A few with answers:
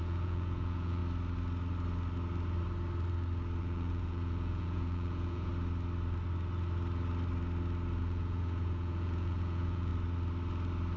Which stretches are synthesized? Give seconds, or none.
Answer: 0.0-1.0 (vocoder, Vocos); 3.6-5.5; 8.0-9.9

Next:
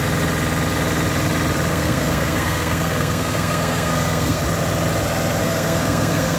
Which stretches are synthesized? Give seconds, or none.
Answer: 1.7-4.4 (codec, SNAC); 5.4-6.4

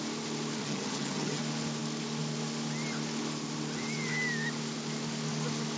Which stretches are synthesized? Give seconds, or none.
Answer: 0.6-1.4 (vocoder, HiFi-GAN)

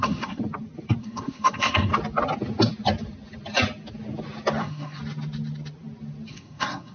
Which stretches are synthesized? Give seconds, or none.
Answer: 0.0-0.4 (codec, SNAC); 1.0-1.9; 4.6-5.0; 6.3-6.9

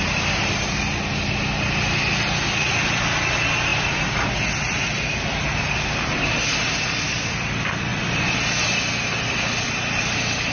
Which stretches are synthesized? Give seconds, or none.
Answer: none